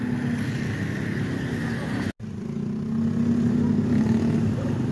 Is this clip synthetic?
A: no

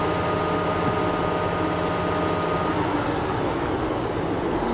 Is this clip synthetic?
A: no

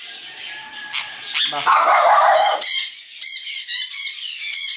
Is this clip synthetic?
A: no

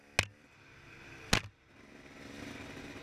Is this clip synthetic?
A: no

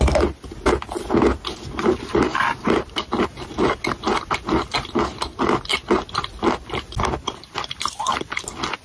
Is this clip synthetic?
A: no